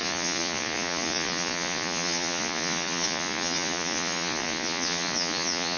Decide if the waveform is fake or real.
fake